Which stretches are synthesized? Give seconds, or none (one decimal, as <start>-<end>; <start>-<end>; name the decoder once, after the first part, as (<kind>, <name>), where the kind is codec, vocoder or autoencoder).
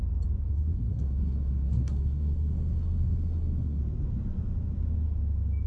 0.4-3.8 (codec, SNAC)